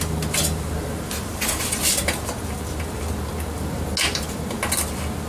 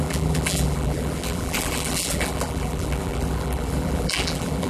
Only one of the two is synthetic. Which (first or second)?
second